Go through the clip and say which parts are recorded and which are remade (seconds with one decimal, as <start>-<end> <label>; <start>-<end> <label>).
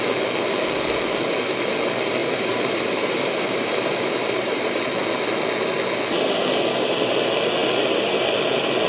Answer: 0.0-2.2 recorded; 2.2-4.8 remade; 4.8-8.9 recorded